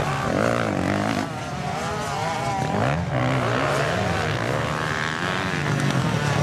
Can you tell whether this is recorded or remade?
recorded